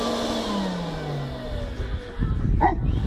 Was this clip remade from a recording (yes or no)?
no